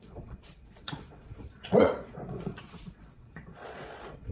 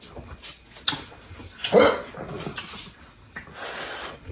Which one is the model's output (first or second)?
first